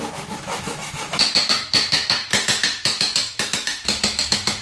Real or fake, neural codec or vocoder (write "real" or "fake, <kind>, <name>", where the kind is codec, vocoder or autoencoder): fake, autoencoder, DAC-VAE